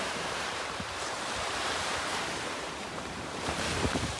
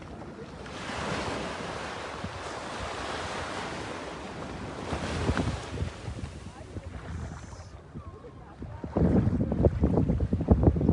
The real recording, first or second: second